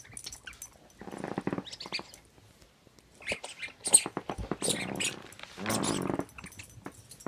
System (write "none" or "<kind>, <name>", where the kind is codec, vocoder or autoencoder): none